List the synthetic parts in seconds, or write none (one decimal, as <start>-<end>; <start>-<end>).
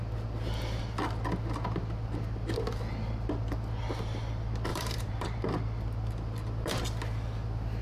4.7-5.4